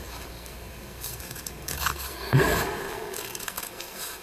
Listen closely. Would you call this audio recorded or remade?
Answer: remade